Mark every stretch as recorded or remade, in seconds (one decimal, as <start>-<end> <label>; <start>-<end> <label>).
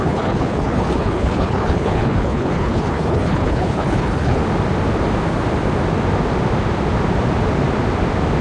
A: 0.0-4.4 remade; 4.4-8.4 recorded